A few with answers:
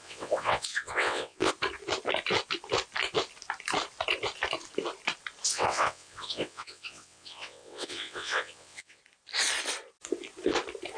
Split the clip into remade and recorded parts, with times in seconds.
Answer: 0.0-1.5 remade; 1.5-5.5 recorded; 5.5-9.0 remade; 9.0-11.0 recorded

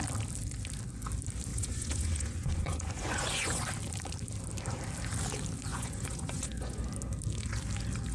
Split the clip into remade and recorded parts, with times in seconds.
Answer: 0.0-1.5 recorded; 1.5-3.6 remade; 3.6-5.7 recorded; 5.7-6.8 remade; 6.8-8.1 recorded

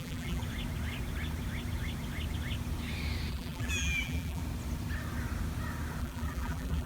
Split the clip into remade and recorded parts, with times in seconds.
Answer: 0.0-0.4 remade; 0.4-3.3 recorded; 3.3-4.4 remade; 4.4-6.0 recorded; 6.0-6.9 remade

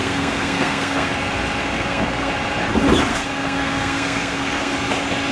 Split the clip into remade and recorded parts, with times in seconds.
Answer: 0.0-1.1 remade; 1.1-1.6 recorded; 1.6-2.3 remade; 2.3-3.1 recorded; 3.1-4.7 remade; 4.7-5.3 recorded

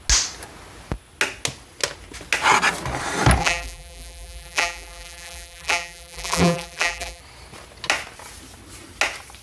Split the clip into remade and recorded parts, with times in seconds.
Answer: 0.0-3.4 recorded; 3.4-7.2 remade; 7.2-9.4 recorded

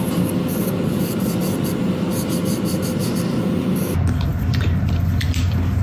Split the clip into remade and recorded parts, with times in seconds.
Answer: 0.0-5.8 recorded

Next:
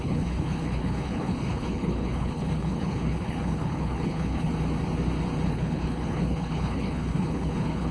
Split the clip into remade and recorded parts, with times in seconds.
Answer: 0.0-4.5 remade; 4.5-5.5 recorded; 5.5-7.9 remade

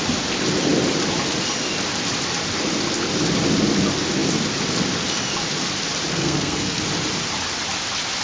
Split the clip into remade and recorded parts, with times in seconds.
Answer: 0.0-6.1 recorded; 6.1-6.8 remade; 6.8-8.2 recorded